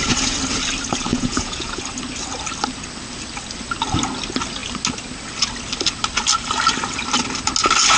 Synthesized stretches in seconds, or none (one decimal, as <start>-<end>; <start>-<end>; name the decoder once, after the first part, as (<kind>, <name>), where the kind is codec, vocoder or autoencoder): 1.1-1.8 (vocoder, Vocos)